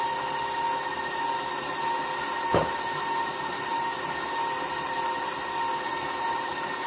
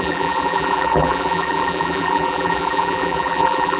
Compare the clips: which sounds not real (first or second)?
second